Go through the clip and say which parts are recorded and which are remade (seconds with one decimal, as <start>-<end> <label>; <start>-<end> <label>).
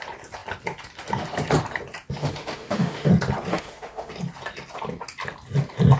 0.0-2.2 recorded; 2.2-3.1 remade; 3.1-3.5 recorded; 3.5-4.1 remade; 4.1-6.0 recorded